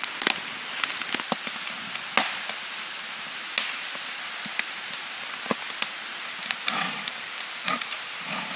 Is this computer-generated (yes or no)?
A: no